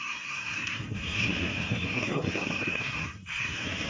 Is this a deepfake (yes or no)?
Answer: yes